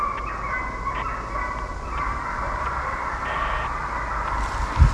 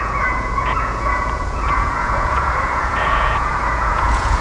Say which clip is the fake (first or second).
second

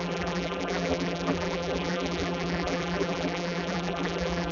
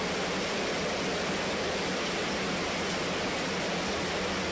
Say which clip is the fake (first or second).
first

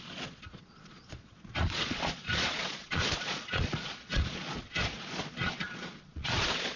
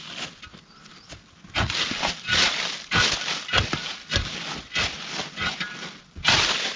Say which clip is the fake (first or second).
first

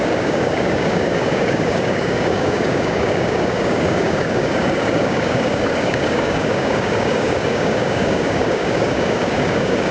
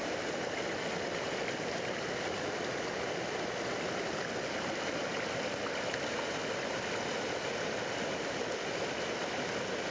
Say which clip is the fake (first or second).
first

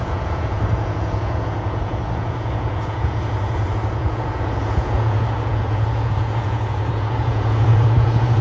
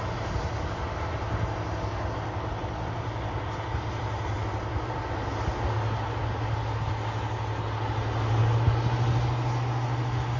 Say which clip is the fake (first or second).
first